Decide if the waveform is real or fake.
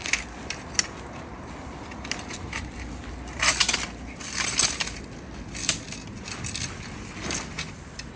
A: real